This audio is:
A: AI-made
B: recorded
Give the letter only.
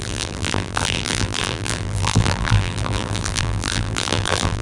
A